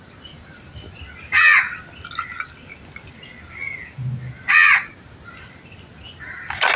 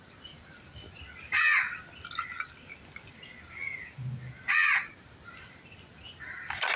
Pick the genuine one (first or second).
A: first